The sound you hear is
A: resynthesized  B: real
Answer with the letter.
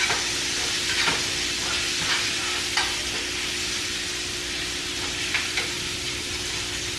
B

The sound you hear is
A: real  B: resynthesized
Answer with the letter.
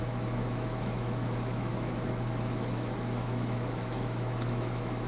B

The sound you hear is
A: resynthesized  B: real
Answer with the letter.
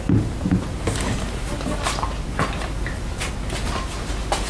B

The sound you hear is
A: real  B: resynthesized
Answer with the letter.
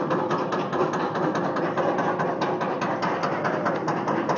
A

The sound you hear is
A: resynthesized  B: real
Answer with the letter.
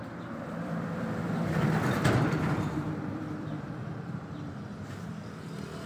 A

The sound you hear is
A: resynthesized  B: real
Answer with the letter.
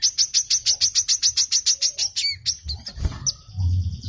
B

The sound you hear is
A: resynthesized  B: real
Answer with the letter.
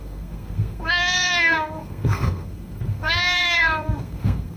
A